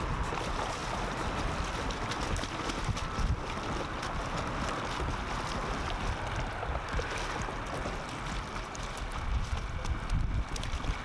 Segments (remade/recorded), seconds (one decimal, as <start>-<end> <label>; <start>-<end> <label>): 0.0-11.0 recorded